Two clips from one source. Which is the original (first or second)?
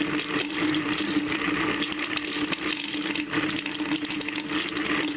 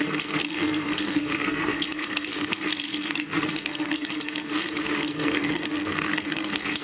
first